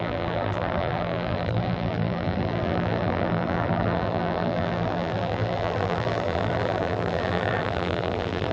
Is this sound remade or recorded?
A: remade